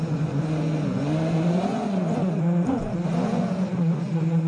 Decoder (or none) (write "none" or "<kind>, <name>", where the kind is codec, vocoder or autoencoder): vocoder, Vocos